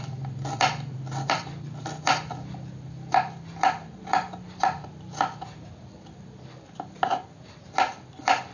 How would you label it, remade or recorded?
recorded